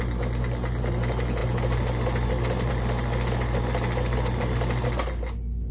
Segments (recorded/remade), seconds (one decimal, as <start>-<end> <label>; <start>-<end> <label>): 0.0-5.7 recorded